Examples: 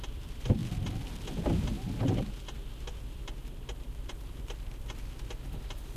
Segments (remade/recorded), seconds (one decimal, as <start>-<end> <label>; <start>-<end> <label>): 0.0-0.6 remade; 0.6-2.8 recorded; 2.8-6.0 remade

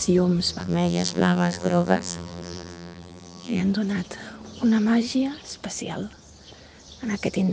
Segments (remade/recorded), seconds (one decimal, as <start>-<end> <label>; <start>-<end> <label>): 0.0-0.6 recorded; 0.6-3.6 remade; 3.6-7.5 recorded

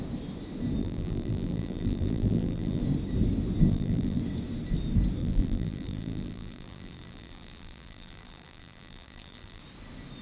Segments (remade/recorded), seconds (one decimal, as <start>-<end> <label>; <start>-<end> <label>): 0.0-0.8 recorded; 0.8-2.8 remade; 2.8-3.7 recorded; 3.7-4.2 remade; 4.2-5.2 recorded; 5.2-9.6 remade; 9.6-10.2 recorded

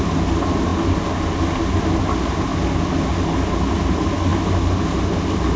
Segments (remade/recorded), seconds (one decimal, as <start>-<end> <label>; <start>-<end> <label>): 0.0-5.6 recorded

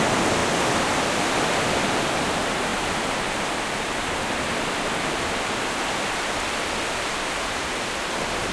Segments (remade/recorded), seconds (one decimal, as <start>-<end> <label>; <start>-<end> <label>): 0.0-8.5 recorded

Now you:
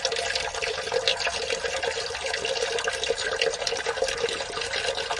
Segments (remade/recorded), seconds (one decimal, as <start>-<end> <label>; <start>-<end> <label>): 0.0-5.2 recorded

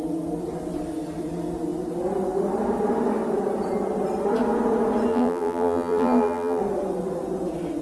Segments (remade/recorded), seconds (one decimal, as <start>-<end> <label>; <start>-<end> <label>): 0.0-5.1 recorded; 5.1-6.6 remade; 6.6-7.8 recorded

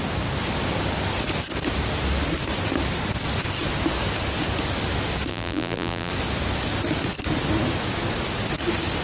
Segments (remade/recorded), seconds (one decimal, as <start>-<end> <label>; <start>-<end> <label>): 0.0-5.3 recorded; 5.3-6.1 remade; 6.1-9.0 recorded